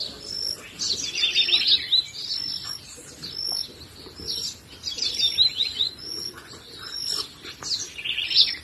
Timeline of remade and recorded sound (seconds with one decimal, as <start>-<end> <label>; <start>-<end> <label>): 0.0-5.5 recorded; 5.5-6.7 remade; 6.7-8.6 recorded